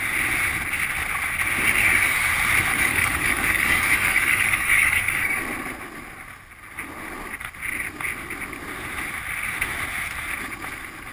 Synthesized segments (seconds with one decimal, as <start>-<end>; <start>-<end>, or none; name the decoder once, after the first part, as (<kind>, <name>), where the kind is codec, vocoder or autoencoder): 1.8-2.3 (codec, DAC); 2.7-5.4